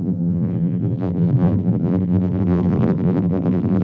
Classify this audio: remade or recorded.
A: remade